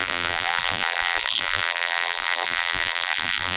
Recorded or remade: remade